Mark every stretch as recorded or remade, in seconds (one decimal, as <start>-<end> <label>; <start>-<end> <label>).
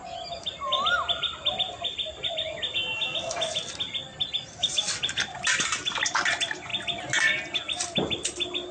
0.0-8.7 recorded